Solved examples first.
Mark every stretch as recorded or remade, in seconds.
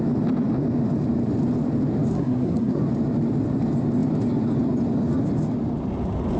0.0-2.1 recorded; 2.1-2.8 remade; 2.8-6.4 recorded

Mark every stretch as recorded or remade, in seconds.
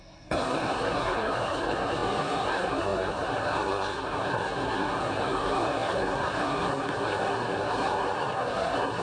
0.0-9.0 remade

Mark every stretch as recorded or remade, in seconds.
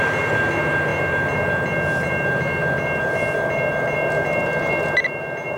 0.0-5.6 recorded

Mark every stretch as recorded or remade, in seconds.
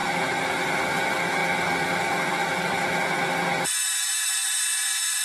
0.0-5.2 recorded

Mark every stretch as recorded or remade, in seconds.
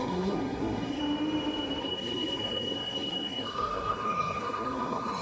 0.0-1.0 remade; 1.0-1.8 recorded; 1.8-5.2 remade